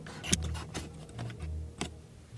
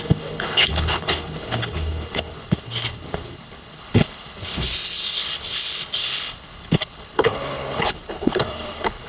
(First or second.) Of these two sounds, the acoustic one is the first